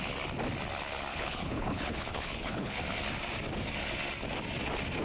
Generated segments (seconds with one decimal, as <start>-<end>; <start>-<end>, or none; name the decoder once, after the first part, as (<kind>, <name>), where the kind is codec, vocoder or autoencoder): 1.1-2.8 (codec, HILCodec)